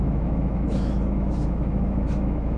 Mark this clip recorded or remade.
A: remade